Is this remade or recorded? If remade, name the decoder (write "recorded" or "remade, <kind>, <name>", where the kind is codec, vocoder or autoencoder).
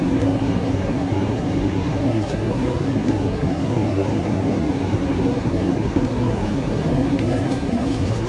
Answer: remade, codec, SNAC